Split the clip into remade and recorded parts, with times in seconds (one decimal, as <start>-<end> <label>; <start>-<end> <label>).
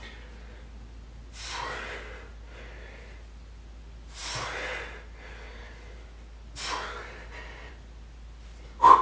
0.0-9.0 recorded